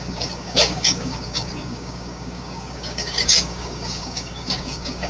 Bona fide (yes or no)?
no